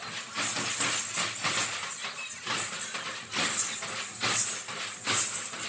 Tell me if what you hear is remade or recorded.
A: recorded